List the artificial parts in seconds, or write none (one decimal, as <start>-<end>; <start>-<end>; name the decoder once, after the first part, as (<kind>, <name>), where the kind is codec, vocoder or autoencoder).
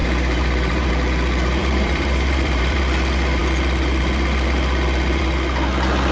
0.0-0.9 (vocoder, BigVGAN v2); 1.6-2.8